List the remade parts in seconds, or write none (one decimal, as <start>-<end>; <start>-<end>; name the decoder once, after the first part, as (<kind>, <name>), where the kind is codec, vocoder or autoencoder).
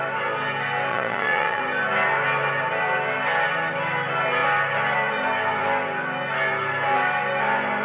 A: 0.9-1.6 (vocoder, Vocos)